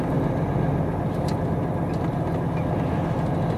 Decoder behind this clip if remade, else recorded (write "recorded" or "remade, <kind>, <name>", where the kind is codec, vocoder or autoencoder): recorded